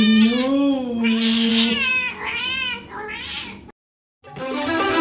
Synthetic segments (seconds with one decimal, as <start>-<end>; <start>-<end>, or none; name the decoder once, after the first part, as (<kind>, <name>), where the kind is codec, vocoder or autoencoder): 0.4-1.5 (autoencoder, DAC-VAE)